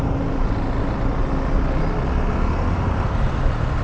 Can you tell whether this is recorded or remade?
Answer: recorded